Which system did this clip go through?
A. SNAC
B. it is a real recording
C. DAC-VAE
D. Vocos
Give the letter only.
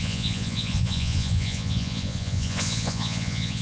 D